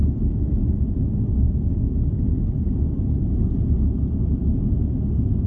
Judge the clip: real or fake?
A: real